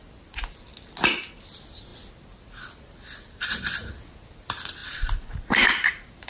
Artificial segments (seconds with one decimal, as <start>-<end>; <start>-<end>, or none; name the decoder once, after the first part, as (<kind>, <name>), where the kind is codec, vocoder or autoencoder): 4.8-6.3 (vocoder, BigVGAN v2)